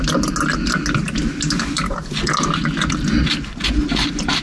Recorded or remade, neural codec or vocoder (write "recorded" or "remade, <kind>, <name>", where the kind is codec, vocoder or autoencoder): recorded